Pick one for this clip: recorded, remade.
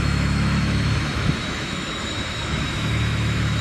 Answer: remade